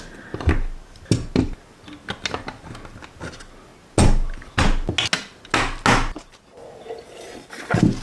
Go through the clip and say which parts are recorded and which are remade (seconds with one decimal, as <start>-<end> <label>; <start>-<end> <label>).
0.0-8.0 recorded